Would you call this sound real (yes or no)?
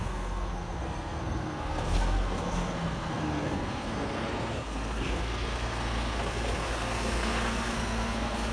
no